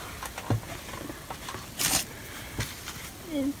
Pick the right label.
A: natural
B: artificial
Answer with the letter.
A